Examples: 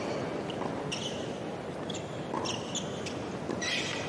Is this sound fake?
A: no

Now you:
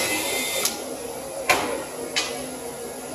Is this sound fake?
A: no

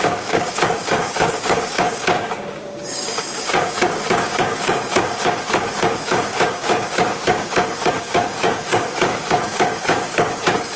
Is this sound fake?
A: yes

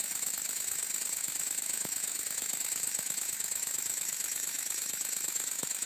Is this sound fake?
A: yes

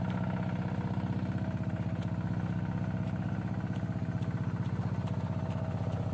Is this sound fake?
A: no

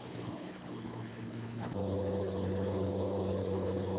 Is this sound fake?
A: yes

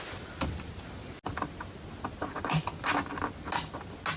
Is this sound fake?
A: no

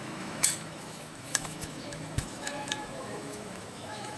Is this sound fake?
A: yes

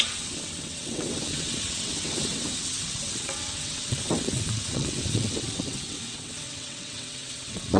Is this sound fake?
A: yes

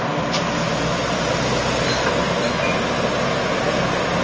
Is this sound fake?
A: no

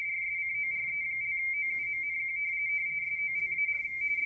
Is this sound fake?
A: no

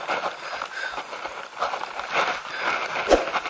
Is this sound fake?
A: no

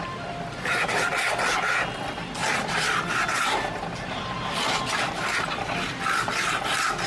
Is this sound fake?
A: no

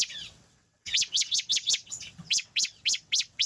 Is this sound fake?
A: yes